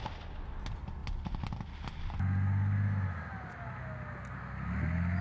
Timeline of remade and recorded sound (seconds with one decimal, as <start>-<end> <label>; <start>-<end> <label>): 0.0-5.2 recorded